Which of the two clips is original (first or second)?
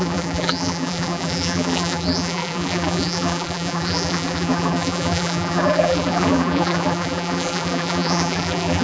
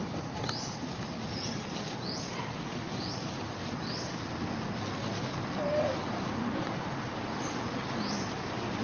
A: second